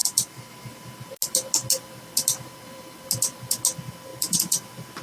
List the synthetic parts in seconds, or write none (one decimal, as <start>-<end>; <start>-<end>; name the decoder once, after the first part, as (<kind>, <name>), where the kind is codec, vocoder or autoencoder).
0.0-0.5 (vocoder, BigVGAN v2); 4.1-4.6